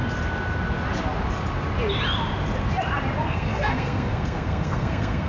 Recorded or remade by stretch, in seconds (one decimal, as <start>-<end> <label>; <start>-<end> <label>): 0.0-3.2 recorded; 3.2-5.3 remade